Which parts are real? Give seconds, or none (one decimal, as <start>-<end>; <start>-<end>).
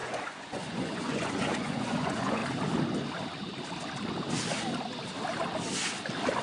2.4-6.4